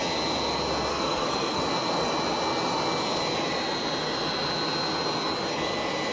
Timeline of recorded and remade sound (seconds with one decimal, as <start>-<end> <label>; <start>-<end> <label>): 0.0-0.9 recorded; 0.9-1.6 remade; 1.6-6.1 recorded